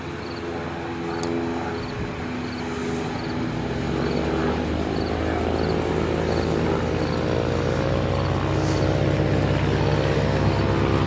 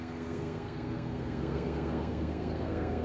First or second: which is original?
first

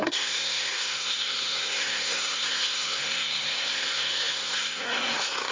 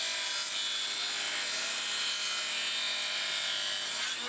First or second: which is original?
second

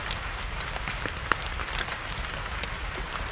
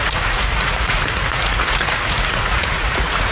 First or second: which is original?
first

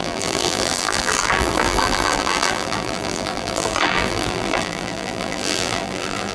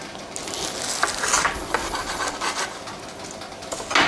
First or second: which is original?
second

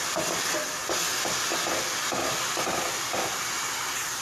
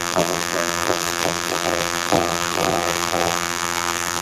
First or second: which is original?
first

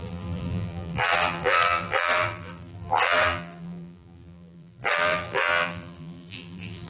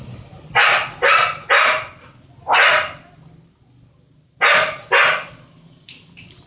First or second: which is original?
second